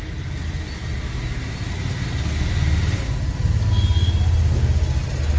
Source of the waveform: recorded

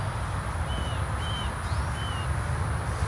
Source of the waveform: recorded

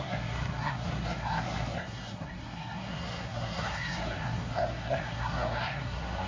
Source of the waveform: remade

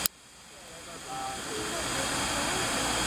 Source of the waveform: recorded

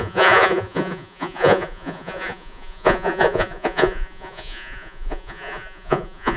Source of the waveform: remade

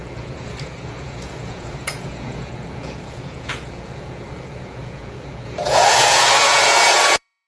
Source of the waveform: remade